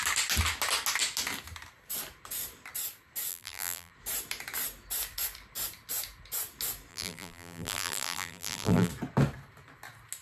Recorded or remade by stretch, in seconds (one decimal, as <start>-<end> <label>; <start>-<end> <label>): 0.0-3.3 recorded; 3.3-3.9 remade; 3.9-6.9 recorded; 6.9-8.9 remade; 8.9-10.2 recorded